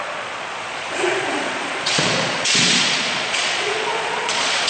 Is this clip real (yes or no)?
no